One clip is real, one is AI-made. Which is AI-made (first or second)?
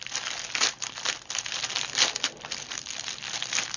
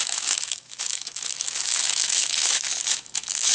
second